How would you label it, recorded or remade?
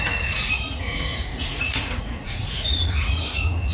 remade